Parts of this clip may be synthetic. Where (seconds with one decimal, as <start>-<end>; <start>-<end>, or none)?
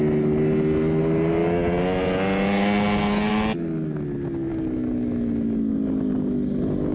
none